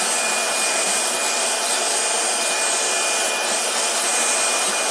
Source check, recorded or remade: recorded